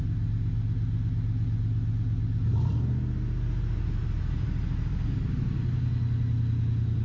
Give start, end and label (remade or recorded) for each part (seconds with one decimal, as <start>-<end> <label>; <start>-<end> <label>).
0.0-7.0 recorded